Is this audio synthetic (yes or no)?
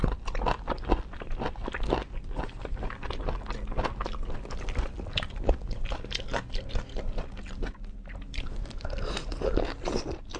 no